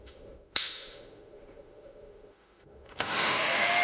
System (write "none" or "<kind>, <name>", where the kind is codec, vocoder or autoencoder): autoencoder, DAC-VAE